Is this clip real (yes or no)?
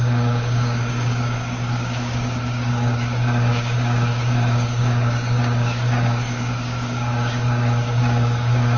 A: no